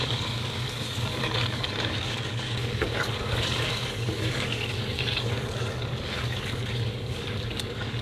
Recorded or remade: remade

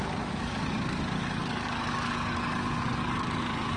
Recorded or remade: remade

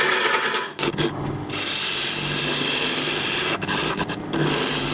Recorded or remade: recorded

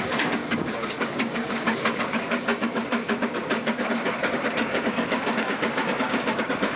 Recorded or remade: remade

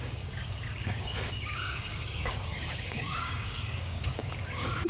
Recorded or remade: remade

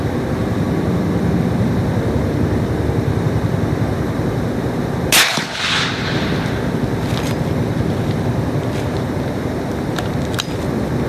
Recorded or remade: recorded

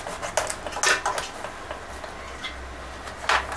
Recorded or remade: recorded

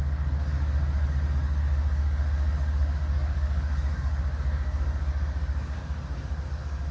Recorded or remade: remade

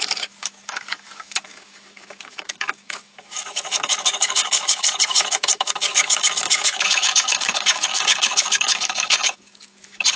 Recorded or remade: remade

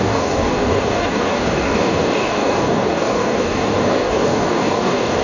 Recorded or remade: remade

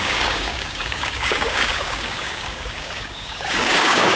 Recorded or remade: remade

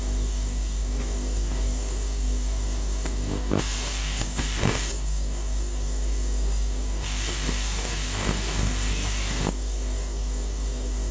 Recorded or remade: remade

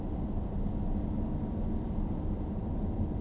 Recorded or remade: recorded